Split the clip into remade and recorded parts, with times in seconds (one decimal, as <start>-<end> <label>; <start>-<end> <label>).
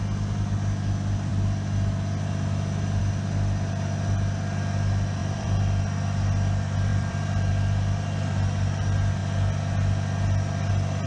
0.0-5.2 recorded; 5.2-5.8 remade; 5.8-6.9 recorded; 6.9-7.5 remade; 7.5-11.1 recorded